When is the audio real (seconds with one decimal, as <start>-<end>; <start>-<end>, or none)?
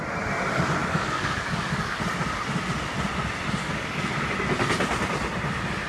0.0-0.8; 2.0-3.6; 4.1-5.9